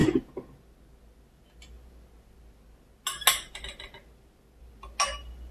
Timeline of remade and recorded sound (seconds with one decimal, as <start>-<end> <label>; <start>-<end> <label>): 0.0-5.5 recorded